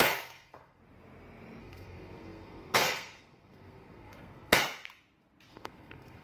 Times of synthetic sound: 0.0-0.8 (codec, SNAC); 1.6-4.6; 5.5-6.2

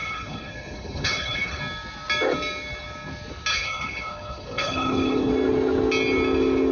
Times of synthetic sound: 0.0-1.6 (codec, HILCodec); 3.5-5.3

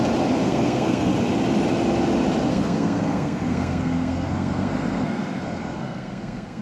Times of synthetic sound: 0.4-1.1 (codec, SNAC); 2.5-6.6

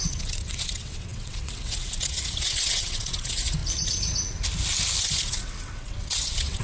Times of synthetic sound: 0.0-3.6 (vocoder, WaveNeXt); 5.0-6.6

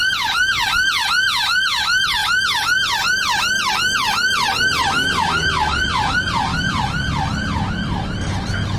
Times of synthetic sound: 6.5-7.7 (vocoder, BigVGAN v2)

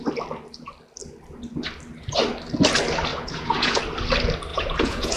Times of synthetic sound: 3.1-3.8 (vocoder, Vocos); 4.5-5.2

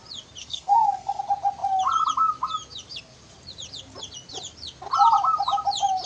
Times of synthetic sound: 0.4-1.2 (codec, SNAC)

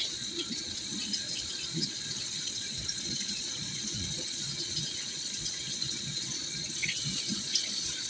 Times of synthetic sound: 0.0-8.1 (vocoder, Vocos)